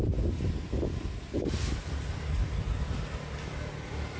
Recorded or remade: recorded